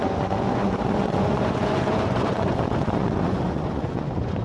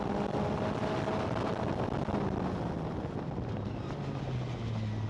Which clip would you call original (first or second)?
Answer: second